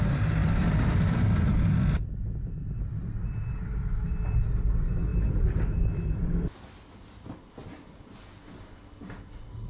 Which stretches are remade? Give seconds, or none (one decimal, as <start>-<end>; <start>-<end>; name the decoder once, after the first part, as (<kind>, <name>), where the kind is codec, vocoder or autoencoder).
0.4-3.1 (vocoder, BigVGAN v2); 5.1-7.9